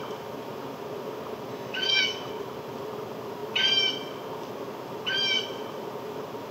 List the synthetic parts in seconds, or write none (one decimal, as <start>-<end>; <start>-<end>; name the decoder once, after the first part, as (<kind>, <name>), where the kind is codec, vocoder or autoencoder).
1.5-2.3 (autoencoder, DAC-VAE)